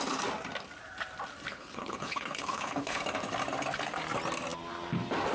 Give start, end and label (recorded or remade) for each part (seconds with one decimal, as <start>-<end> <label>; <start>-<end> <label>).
0.0-1.5 recorded; 1.5-3.0 remade; 3.0-5.3 recorded